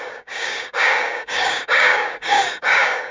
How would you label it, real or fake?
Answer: fake